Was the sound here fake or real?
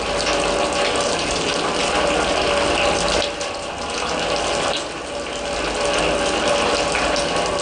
real